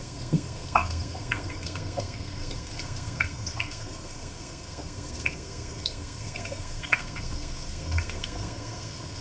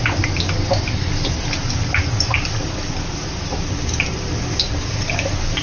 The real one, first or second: second